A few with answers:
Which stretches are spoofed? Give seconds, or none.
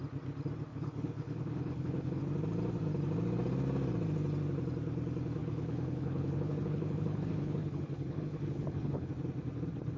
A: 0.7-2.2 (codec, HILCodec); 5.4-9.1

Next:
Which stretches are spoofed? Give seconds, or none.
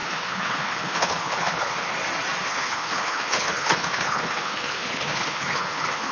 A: 0.0-1.9 (codec, HILCodec); 2.4-6.1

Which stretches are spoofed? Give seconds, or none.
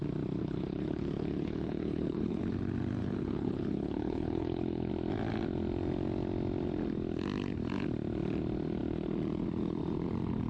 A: 0.4-2.4 (codec, HILCodec); 3.0-4.9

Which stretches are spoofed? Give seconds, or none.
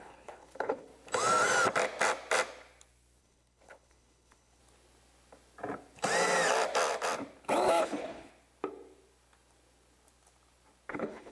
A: 0.0-0.9 (codec, HILCodec); 3.2-4.6; 7.8-8.3; 10.9-11.3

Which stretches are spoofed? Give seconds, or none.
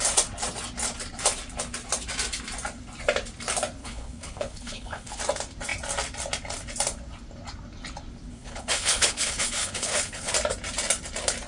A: 3.8-5.2 (codec, HILCodec); 8.3-10.3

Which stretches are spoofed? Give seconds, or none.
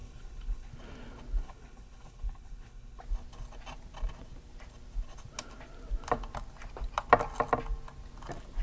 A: 0.0-0.7 (codec, HILCodec); 1.4-3.0